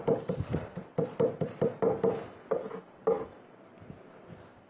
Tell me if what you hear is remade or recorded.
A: recorded